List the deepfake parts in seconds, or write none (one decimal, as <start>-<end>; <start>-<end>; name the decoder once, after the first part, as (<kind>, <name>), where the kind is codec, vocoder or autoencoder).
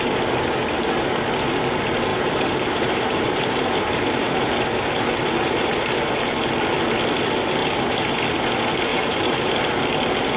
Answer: 2.1-4.5 (vocoder, BigVGAN v2); 7.6-8.2; 8.9-9.5